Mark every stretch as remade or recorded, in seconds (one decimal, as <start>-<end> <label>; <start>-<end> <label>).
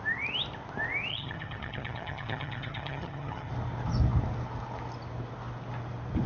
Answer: 0.0-1.1 recorded; 1.1-3.5 remade; 3.5-6.3 recorded